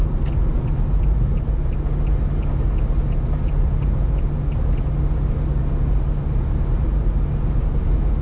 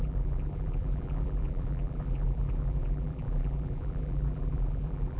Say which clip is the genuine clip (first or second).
first